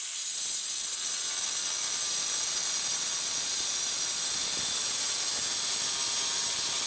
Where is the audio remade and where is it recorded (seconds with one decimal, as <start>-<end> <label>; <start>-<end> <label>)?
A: 0.0-6.9 recorded